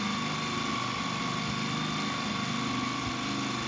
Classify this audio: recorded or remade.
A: recorded